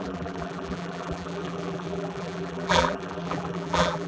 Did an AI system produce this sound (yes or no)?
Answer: yes